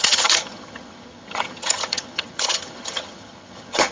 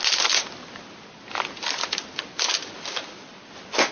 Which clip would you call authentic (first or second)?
second